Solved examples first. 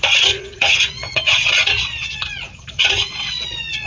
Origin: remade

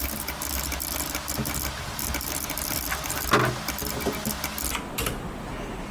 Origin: recorded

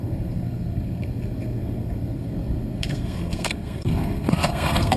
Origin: remade